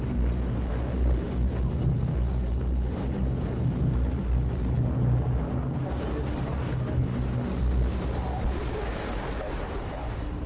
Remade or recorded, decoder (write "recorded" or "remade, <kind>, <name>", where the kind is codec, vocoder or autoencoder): recorded